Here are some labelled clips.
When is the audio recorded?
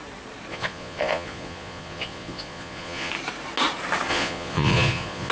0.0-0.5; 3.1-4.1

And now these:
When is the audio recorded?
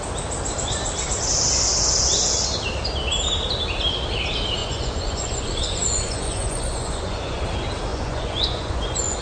0.0-4.6; 7.4-7.9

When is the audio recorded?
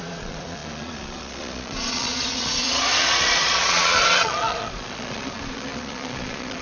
none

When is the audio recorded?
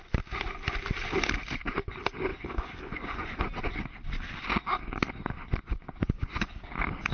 0.0-2.3; 3.4-6.0; 6.5-7.1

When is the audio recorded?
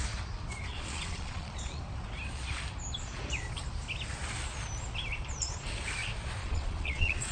0.0-0.7; 1.8-6.4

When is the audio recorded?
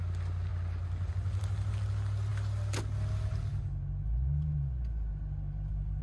0.0-6.0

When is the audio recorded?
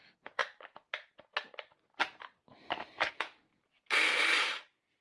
0.4-3.1; 3.6-5.0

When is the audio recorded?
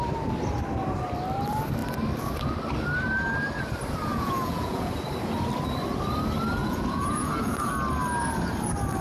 0.0-4.1; 4.9-6.6; 7.7-9.0